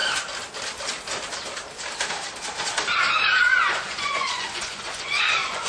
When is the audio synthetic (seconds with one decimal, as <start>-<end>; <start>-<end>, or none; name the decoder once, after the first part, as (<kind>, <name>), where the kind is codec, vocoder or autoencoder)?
3.4-5.7 (vocoder, Vocos)

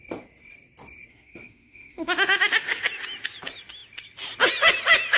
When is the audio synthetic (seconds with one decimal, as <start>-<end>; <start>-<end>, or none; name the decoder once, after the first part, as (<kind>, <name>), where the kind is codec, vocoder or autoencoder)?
1.1-2.8 (autoencoder, DAC-VAE)

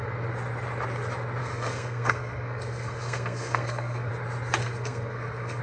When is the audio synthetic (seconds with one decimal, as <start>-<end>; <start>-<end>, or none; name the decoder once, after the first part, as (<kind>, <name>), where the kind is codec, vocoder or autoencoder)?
1.4-4.1 (codec, SNAC); 4.6-5.6

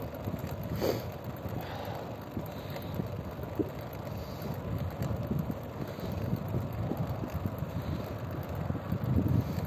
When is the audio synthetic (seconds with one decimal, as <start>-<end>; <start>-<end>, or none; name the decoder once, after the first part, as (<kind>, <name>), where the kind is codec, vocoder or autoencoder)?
none